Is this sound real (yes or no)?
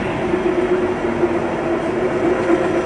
yes